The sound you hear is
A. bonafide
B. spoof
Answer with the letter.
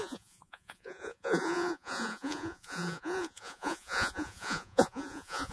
B